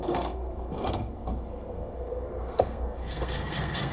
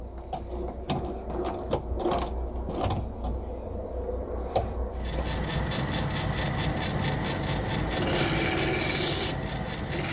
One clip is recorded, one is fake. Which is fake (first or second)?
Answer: first